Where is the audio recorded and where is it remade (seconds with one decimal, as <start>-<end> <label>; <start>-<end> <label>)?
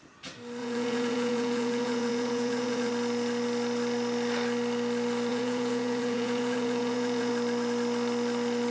0.0-0.6 recorded; 0.6-2.9 remade; 2.9-5.3 recorded; 5.3-7.3 remade; 7.3-8.7 recorded